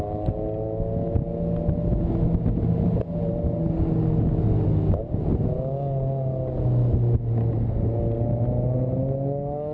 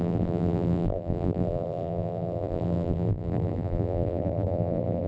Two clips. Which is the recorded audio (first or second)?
first